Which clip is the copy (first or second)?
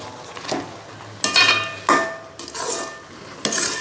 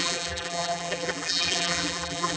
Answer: second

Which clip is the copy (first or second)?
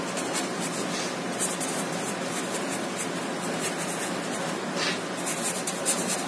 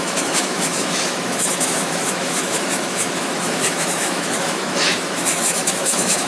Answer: second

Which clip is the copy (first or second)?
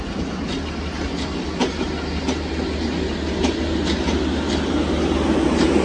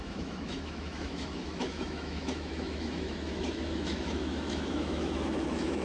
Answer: second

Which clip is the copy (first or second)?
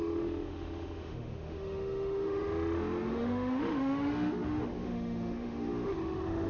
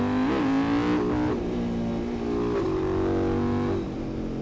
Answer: first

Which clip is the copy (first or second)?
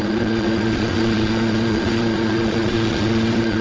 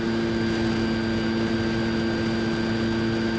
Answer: first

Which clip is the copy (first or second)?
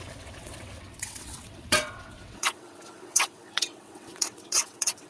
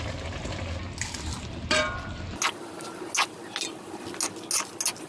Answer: first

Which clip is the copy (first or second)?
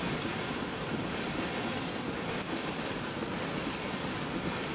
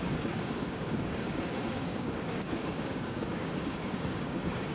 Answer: second